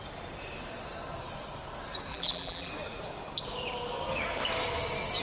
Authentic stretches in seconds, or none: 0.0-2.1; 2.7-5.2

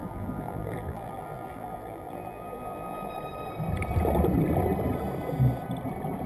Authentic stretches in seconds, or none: 3.1-6.3